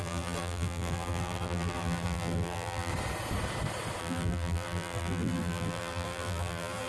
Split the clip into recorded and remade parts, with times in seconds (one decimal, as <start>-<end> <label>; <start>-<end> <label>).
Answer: 0.0-2.9 remade; 2.9-4.0 recorded; 4.0-6.9 remade